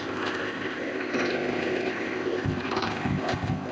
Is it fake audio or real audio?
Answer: fake